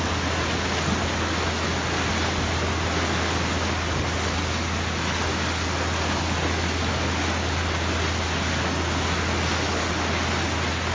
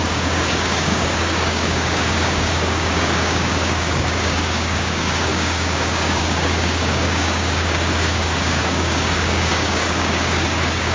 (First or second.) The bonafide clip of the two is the first